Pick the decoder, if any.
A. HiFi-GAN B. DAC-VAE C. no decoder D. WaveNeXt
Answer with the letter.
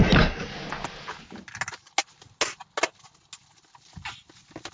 C